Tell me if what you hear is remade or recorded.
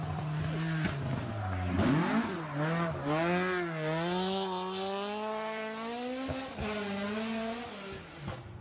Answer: recorded